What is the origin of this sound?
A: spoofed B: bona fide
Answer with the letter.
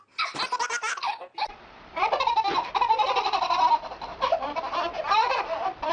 B